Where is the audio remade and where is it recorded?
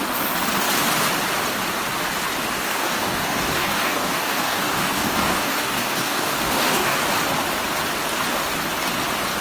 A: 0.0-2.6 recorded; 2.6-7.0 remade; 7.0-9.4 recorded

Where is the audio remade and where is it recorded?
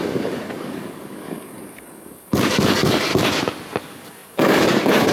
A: 0.0-3.1 remade; 3.1-3.8 recorded; 3.8-5.1 remade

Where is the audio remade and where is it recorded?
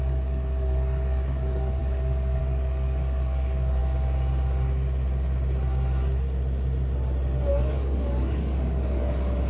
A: 0.0-3.8 remade; 3.8-7.5 recorded; 7.5-9.5 remade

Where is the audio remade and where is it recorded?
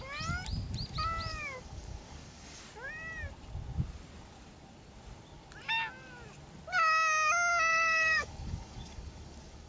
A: 0.0-1.3 recorded; 1.3-2.6 remade; 2.6-7.7 recorded; 7.7-9.7 remade